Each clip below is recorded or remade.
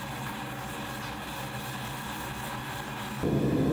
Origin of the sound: recorded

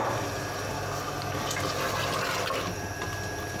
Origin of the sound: recorded